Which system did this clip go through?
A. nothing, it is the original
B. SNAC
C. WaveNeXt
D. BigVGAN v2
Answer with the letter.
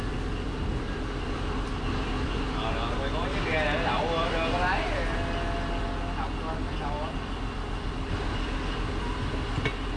A